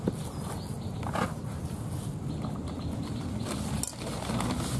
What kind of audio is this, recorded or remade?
recorded